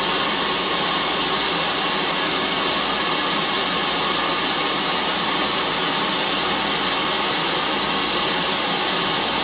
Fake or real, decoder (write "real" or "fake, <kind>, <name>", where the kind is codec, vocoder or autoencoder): real